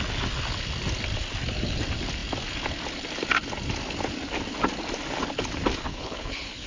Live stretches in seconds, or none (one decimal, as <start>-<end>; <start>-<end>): 0.0-5.9